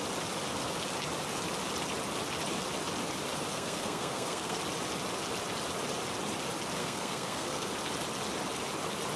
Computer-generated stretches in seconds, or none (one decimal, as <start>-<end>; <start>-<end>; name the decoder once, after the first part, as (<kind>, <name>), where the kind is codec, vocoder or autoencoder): 3.5-4.6 (codec, SNAC); 6.8-7.7